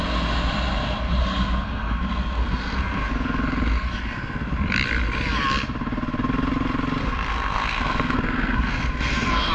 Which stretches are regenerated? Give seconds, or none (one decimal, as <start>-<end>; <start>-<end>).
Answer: 1.2-3.1; 7.0-9.5